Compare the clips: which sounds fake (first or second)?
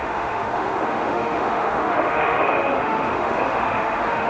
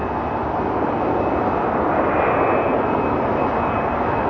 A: first